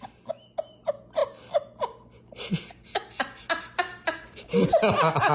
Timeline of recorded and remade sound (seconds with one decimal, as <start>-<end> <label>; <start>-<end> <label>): 0.0-5.3 recorded